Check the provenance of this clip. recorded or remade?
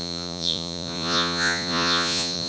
remade